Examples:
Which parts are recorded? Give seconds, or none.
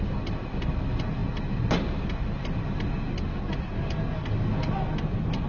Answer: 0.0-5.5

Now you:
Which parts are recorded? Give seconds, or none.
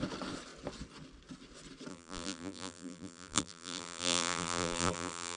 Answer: 0.0-1.9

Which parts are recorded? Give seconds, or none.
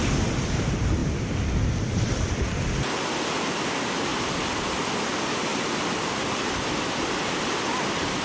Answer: 0.0-8.2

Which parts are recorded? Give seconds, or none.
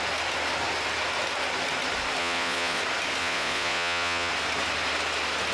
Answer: 0.0-2.2; 2.8-3.2; 4.3-5.5